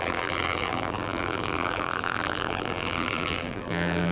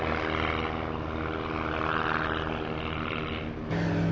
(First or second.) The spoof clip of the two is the first